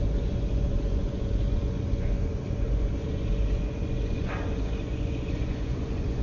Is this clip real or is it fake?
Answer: fake